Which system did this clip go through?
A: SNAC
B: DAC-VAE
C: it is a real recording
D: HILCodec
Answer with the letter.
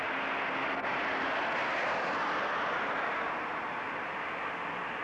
C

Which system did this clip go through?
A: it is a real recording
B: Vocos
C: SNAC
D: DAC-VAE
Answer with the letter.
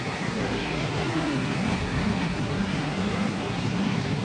C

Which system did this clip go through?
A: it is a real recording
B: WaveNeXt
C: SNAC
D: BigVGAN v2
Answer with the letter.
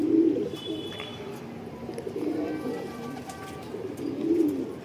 A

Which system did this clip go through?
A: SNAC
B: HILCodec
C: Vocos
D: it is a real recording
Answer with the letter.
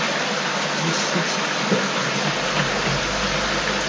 D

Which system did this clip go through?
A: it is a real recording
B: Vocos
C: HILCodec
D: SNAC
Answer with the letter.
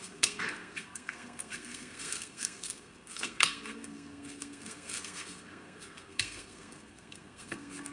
D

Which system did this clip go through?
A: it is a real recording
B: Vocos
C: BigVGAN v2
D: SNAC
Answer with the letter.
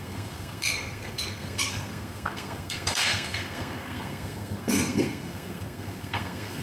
D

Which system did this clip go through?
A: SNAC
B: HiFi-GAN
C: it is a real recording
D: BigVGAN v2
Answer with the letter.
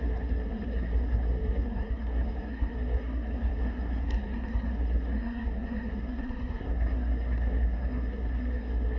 A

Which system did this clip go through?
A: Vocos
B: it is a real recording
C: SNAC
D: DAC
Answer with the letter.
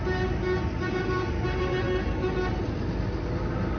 B